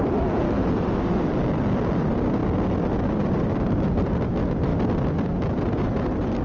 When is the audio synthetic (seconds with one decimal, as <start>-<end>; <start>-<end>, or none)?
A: 0.0-2.4; 3.2-4.7; 5.2-6.4